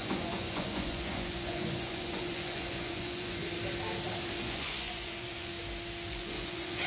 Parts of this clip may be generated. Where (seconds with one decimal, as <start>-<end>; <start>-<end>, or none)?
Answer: 0.0-3.4; 4.4-5.5; 6.1-6.9